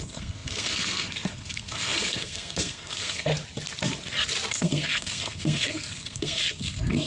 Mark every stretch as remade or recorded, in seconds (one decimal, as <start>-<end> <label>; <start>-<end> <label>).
0.0-3.3 remade; 3.3-4.5 recorded; 4.5-7.1 remade